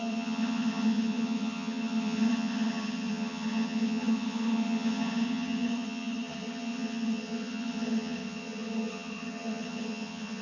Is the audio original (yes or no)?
no